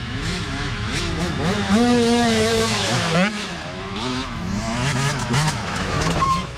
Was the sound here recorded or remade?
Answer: remade